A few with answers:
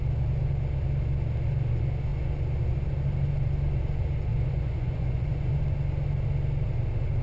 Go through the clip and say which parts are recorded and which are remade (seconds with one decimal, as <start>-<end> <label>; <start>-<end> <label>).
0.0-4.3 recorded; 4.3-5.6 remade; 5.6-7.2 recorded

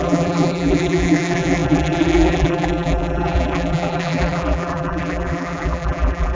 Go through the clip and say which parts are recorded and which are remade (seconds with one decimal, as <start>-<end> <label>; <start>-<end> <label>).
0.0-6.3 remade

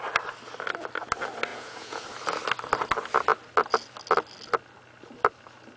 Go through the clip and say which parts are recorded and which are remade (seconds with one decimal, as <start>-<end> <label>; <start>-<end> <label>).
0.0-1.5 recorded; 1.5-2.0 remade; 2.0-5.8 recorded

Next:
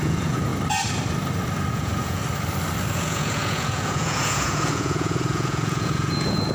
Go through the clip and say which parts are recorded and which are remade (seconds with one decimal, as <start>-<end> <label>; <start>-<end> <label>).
0.0-0.5 remade; 0.5-1.7 recorded; 1.7-2.2 remade; 2.2-2.9 recorded; 2.9-6.5 remade

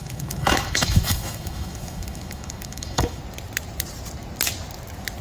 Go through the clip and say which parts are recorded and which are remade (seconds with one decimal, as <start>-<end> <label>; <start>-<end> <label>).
0.0-3.2 remade; 3.2-5.2 recorded